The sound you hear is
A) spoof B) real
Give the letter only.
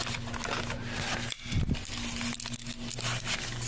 B